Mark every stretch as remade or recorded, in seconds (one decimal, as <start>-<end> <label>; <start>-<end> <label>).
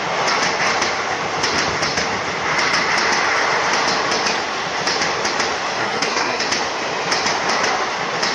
0.0-5.8 recorded; 5.8-6.4 remade; 6.4-8.3 recorded